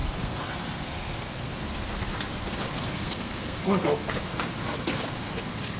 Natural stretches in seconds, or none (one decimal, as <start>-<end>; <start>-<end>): 1.5-2.3